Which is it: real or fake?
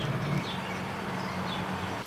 real